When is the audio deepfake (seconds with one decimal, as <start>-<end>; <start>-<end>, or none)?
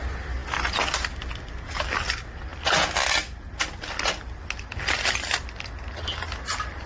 none